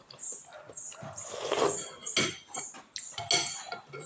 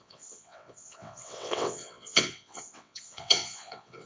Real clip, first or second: first